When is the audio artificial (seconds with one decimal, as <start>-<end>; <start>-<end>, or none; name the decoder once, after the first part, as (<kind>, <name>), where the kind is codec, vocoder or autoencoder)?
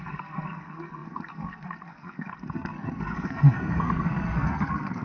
0.0-5.0 (codec, SNAC)